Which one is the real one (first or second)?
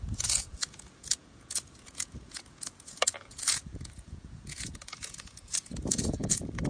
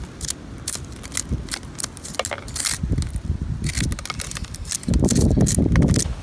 second